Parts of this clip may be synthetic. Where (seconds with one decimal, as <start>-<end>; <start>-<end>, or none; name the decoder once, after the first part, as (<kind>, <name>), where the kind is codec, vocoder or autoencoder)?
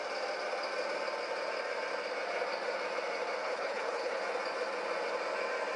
3.4-4.2 (codec, HILCodec)